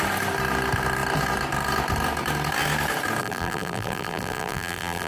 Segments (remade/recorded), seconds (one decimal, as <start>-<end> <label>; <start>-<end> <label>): 0.0-3.2 recorded; 3.2-5.1 remade